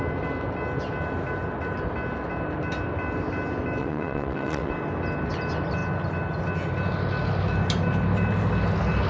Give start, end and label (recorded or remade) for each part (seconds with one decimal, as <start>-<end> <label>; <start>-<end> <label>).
0.0-3.8 recorded; 3.8-4.7 remade; 4.7-9.1 recorded